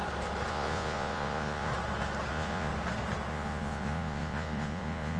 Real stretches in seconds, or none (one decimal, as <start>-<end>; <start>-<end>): 0.0-0.5; 1.7-2.3; 2.7-3.3